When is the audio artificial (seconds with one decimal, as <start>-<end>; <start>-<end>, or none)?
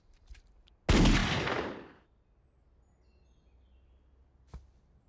none